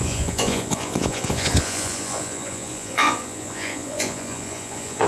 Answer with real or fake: fake